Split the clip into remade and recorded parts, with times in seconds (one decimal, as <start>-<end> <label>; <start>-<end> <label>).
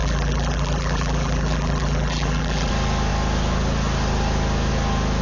0.0-2.7 remade; 2.7-5.2 recorded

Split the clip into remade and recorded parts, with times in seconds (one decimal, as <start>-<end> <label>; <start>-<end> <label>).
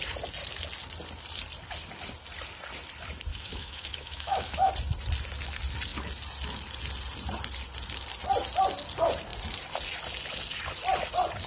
0.0-3.3 recorded; 3.3-4.7 remade; 4.7-11.5 recorded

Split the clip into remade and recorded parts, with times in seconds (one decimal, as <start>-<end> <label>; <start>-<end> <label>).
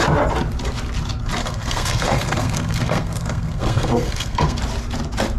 0.0-1.4 recorded; 1.4-4.6 remade; 4.6-5.4 recorded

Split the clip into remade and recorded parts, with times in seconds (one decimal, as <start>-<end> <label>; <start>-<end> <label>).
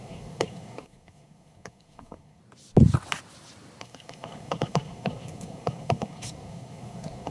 0.0-2.4 remade; 2.4-3.8 recorded; 3.8-7.3 remade